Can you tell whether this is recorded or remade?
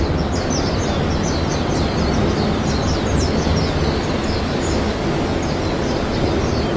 recorded